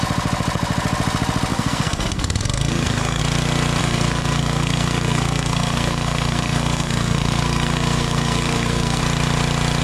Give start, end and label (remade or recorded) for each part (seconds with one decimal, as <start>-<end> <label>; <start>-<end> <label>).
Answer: 0.0-1.5 recorded; 1.5-3.2 remade; 3.2-3.8 recorded; 3.8-9.0 remade; 9.0-9.8 recorded